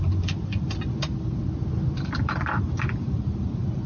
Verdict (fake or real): real